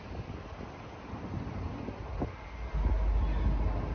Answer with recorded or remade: recorded